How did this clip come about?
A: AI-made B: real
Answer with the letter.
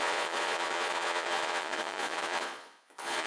A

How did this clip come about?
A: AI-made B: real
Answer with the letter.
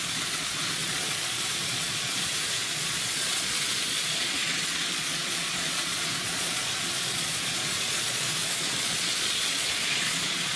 A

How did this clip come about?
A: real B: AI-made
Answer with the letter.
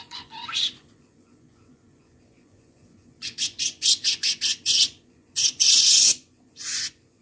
B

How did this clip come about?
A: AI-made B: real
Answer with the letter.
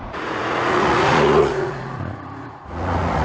A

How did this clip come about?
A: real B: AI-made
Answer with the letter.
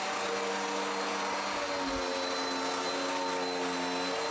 A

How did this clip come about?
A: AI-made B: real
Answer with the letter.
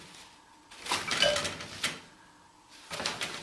B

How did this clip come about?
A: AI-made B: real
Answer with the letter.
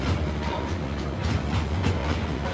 A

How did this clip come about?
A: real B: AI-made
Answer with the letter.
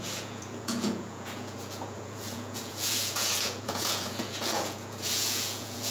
B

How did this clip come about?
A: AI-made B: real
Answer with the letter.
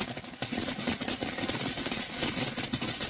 A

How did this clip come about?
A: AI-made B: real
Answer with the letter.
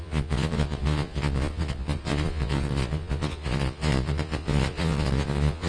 A